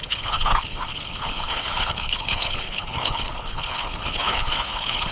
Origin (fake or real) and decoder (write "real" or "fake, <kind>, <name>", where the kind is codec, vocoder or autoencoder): fake, codec, HILCodec